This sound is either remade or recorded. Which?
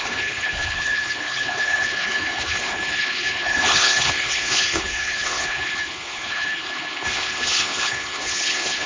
remade